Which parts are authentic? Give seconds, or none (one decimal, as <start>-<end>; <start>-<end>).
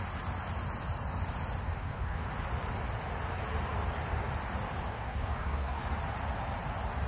0.0-1.8; 2.3-4.9; 5.8-7.1